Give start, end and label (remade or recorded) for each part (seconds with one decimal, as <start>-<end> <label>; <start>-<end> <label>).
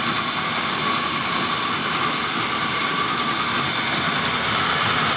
0.0-5.2 recorded